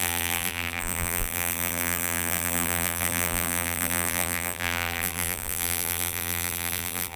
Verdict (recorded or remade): remade